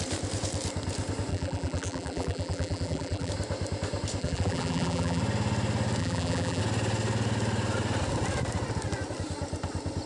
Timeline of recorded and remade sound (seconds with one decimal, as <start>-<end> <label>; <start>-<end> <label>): 0.0-1.3 recorded; 1.3-3.3 remade; 3.3-4.2 recorded; 4.2-5.2 remade; 5.2-6.0 recorded; 6.0-6.6 remade; 6.6-10.1 recorded